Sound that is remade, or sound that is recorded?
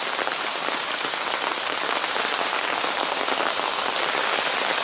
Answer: recorded